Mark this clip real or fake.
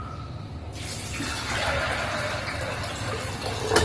real